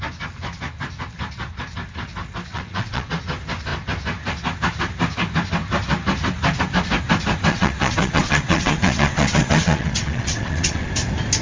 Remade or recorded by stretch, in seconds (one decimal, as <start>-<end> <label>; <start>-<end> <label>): 0.0-2.5 recorded; 2.5-3.1 remade; 3.1-7.5 recorded; 7.5-10.9 remade; 10.9-11.4 recorded